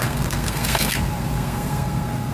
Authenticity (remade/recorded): remade